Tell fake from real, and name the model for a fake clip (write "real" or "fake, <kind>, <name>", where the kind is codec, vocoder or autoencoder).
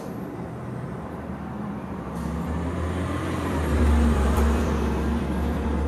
fake, vocoder, BigVGAN v2